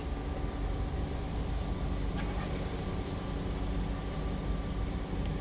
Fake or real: real